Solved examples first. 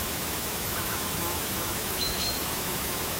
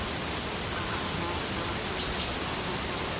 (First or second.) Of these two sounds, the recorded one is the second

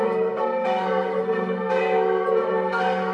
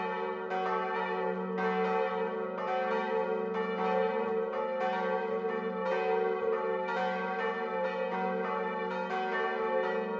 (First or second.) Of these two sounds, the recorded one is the second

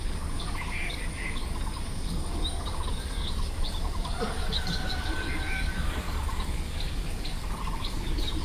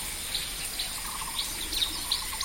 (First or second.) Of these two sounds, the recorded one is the second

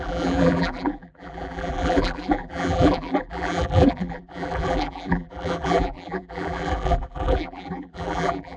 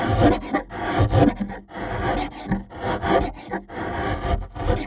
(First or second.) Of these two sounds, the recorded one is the second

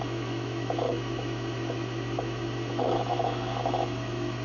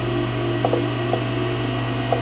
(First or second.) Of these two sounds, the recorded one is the second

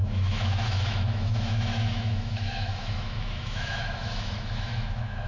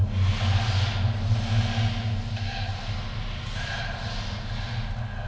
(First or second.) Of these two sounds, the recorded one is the second